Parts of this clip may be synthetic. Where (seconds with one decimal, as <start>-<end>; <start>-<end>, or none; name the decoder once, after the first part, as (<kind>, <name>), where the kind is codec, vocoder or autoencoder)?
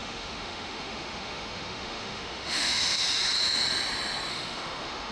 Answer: 0.0-3.0 (autoencoder, DAC-VAE); 4.3-5.1